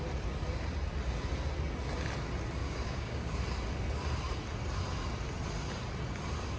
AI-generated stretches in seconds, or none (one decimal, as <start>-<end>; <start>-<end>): 2.6-3.4